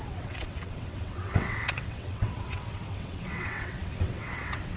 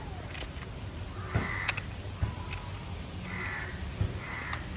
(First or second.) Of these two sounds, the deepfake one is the first